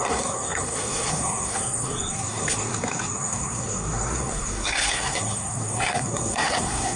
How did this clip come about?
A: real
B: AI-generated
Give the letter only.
B